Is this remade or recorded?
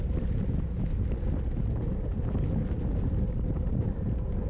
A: recorded